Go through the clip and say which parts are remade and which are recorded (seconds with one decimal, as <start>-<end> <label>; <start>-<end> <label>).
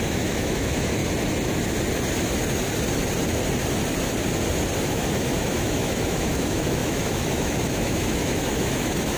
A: 0.0-1.0 remade; 1.0-4.9 recorded; 4.9-9.2 remade